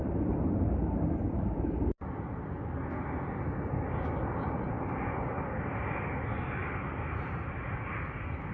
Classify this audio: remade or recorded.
recorded